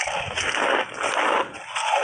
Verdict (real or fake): real